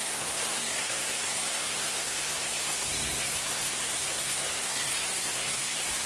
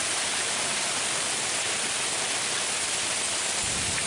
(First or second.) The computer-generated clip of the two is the first